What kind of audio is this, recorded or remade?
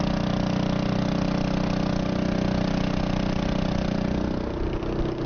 recorded